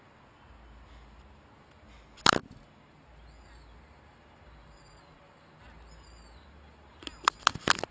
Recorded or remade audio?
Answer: recorded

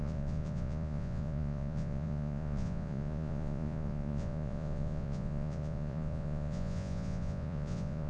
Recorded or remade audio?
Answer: remade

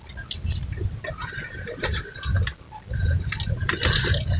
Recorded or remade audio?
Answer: recorded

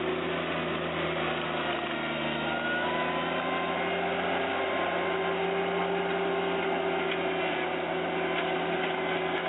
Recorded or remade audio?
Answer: recorded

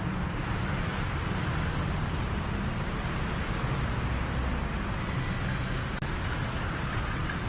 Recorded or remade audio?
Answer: recorded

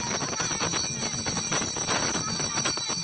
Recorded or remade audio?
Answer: recorded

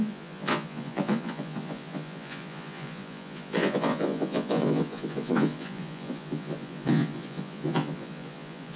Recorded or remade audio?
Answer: remade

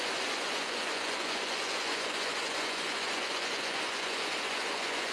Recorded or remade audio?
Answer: remade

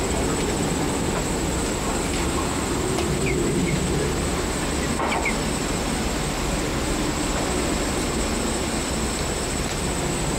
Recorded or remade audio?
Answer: recorded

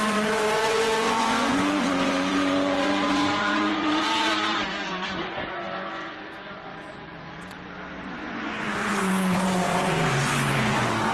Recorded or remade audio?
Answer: remade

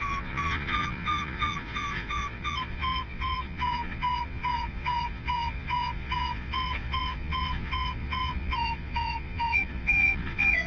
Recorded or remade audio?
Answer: remade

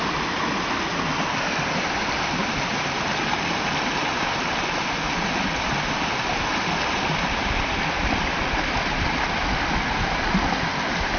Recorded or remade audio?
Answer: recorded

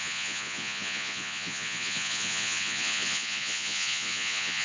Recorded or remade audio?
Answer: remade